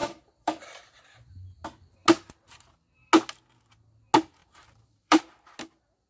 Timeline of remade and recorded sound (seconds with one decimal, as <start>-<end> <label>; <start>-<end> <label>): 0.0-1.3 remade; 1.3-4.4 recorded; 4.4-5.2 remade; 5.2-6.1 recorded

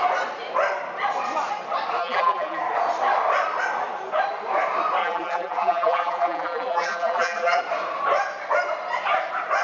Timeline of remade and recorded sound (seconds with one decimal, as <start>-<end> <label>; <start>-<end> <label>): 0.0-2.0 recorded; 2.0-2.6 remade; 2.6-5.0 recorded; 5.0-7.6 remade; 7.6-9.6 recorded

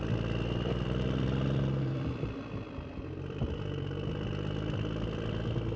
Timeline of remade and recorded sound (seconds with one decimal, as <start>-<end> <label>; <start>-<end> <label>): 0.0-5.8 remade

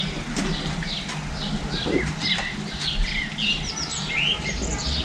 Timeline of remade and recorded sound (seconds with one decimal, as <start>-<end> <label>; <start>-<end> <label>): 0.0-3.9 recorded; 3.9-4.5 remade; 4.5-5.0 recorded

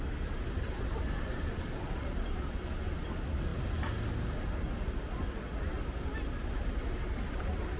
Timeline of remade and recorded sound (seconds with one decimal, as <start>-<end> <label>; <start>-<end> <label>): 0.0-7.8 recorded